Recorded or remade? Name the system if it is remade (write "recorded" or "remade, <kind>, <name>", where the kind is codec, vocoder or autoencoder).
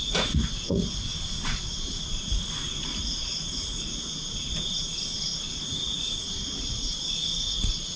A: remade, vocoder, Vocos